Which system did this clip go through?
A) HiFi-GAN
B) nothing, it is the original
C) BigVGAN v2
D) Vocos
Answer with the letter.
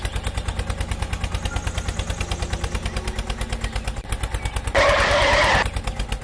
B